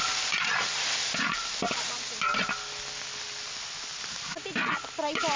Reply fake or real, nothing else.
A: real